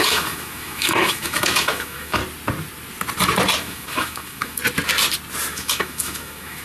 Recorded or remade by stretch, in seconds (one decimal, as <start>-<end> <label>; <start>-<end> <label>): 0.0-2.2 remade; 2.2-3.6 recorded; 3.6-4.6 remade; 4.6-5.5 recorded; 5.5-6.6 remade